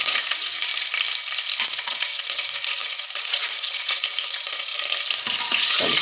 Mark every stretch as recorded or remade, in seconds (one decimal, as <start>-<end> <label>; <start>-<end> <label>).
0.0-0.7 remade; 0.7-1.6 recorded; 1.6-4.7 remade; 4.7-5.4 recorded; 5.4-6.0 remade